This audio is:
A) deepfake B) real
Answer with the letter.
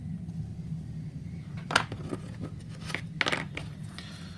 B